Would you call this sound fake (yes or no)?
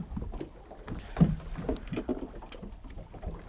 no